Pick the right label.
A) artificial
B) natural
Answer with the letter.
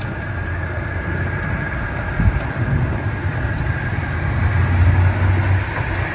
B